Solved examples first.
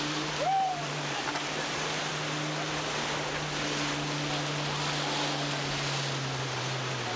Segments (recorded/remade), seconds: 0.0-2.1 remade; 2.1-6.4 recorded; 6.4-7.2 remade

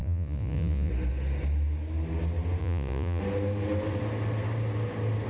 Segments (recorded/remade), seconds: 0.0-0.9 remade; 0.9-2.6 recorded; 2.6-3.2 remade; 3.2-5.3 recorded

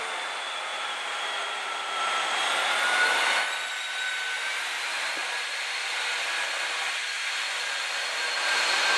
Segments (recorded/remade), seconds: 0.0-0.7 recorded; 0.7-2.4 remade; 2.4-4.4 recorded; 4.4-5.1 remade; 5.1-9.0 recorded

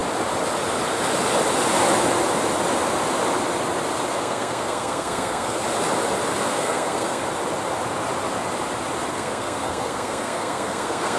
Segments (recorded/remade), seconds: 0.0-4.1 recorded; 4.1-5.6 remade; 5.6-6.4 recorded; 6.4-7.2 remade; 7.2-9.1 recorded; 9.1-11.2 remade

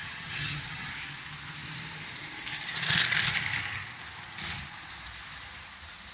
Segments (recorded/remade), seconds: 0.0-0.9 remade; 0.9-6.1 recorded

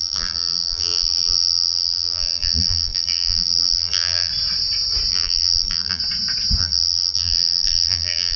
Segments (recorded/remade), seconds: 0.0-4.3 remade; 4.3-5.1 recorded; 5.1-6.0 remade; 6.0-6.6 recorded; 6.6-8.4 remade

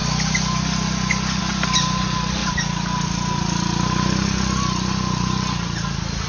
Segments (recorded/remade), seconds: 0.0-6.3 recorded

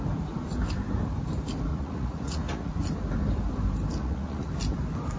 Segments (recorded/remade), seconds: 0.0-1.7 recorded; 1.7-2.7 remade; 2.7-4.0 recorded; 4.0-4.5 remade; 4.5-5.2 recorded